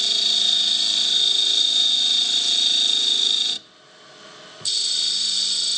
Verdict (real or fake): real